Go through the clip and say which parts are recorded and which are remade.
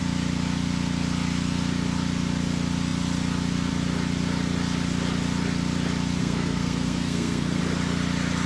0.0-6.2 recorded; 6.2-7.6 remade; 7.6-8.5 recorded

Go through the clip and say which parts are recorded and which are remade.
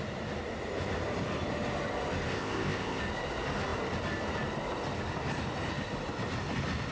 0.0-2.3 recorded; 2.3-3.0 remade; 3.0-6.9 recorded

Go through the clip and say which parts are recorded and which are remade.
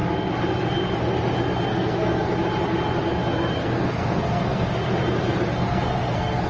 0.0-1.7 recorded; 1.7-2.3 remade; 2.3-3.6 recorded; 3.6-4.7 remade; 4.7-5.6 recorded; 5.6-6.5 remade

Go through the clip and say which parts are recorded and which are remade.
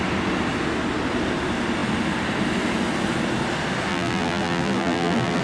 0.0-3.9 recorded; 3.9-5.4 remade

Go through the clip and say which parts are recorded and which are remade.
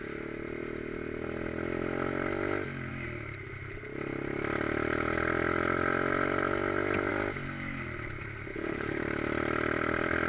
0.0-8.5 recorded; 8.5-9.0 remade; 9.0-10.3 recorded